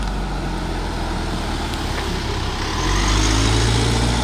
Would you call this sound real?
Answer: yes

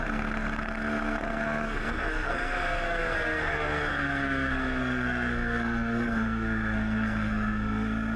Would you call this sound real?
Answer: no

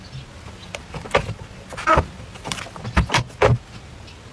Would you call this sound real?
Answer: yes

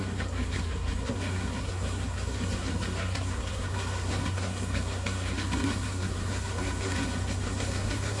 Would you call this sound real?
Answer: no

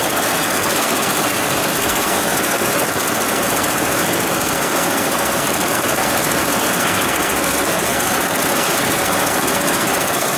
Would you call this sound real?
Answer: no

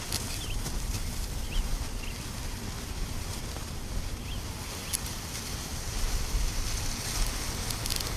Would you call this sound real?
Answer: yes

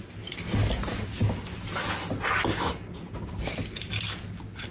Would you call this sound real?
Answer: yes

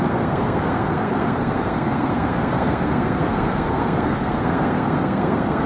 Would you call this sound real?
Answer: no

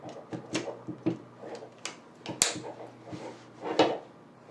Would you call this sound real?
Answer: yes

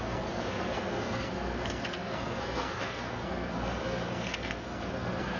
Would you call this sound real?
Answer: no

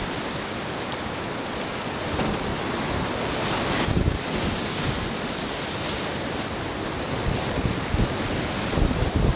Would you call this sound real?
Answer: yes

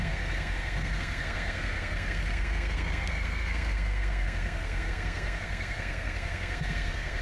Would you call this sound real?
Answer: no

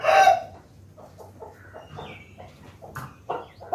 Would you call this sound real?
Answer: yes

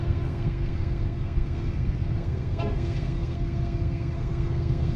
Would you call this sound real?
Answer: no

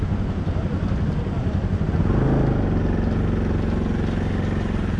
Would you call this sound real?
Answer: yes